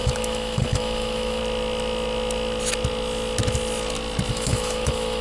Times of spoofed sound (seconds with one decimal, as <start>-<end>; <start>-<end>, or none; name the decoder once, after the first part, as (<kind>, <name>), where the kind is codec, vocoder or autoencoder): 0.0-1.4 (autoencoder, DAC-VAE); 4.3-5.2